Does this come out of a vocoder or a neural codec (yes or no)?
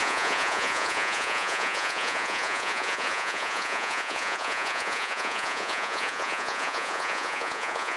yes